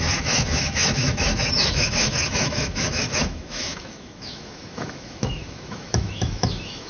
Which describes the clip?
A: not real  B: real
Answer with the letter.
A